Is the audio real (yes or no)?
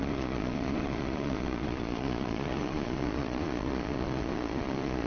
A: no